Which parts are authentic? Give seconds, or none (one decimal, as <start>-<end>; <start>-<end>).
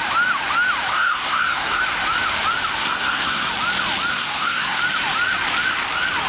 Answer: 0.0-0.9; 1.8-2.8; 3.5-4.1; 4.8-6.3